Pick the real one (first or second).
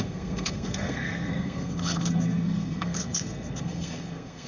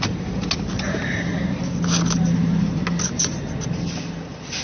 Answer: second